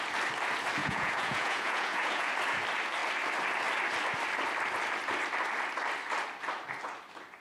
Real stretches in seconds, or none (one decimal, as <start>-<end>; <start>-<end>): 0.0-0.8; 2.3-7.4

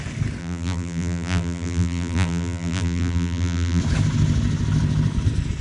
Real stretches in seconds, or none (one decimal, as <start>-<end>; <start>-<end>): 0.0-0.4; 3.8-5.6

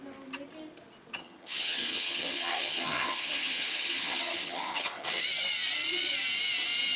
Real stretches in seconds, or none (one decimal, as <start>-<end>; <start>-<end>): 0.0-1.2; 5.2-7.0

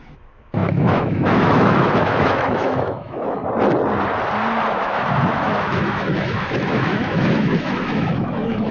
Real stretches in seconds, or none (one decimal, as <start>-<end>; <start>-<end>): 3.4-4.7

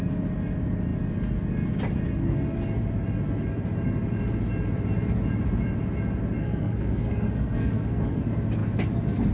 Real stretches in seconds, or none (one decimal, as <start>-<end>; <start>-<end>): 0.0-6.4; 8.2-9.3